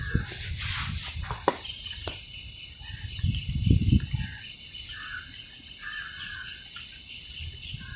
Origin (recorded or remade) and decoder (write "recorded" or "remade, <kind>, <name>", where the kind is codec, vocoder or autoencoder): recorded